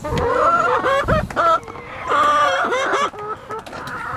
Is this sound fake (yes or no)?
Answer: no